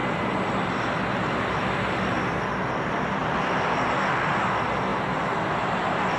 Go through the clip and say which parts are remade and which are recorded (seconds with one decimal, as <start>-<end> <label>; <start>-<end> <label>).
0.0-6.2 recorded

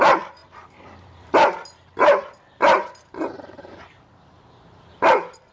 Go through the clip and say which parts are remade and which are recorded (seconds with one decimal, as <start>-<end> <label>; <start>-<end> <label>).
0.0-5.5 remade

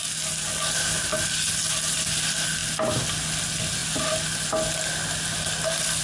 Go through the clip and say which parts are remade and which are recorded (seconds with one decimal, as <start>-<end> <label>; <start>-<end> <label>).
0.0-6.0 recorded

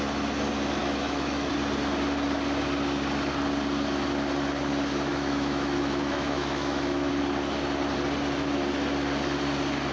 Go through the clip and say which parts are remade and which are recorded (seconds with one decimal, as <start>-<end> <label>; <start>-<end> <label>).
0.0-0.8 recorded; 0.8-1.5 remade; 1.5-5.1 recorded; 5.1-7.1 remade; 7.1-9.9 recorded